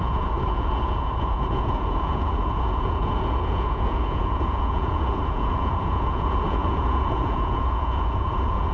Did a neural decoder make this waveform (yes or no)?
yes